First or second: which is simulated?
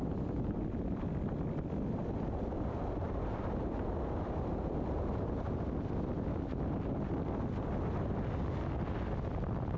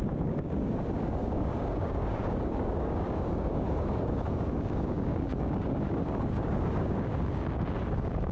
second